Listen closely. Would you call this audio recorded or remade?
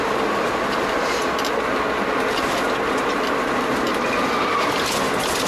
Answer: recorded